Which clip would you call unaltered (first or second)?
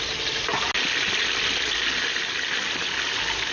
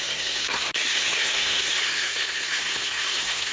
first